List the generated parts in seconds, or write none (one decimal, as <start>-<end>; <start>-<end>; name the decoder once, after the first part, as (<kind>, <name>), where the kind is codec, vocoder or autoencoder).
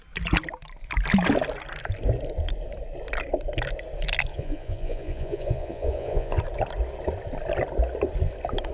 4.3-6.4 (vocoder, Vocos)